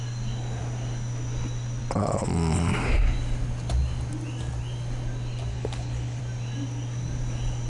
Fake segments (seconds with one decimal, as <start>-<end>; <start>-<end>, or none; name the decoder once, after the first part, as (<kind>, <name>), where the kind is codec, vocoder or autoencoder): 5.5-6.2 (codec, HILCodec)